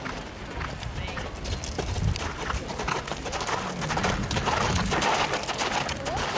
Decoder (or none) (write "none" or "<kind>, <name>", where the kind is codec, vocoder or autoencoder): none